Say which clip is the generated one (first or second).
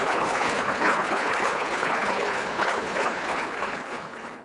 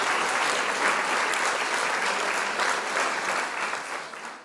first